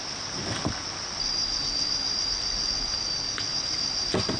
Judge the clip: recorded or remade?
recorded